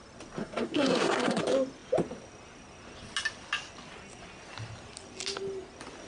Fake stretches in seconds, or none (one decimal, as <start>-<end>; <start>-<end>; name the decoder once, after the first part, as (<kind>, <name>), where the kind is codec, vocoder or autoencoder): 0.4-1.4 (codec, SNAC)